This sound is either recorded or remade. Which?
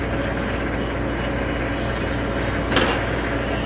recorded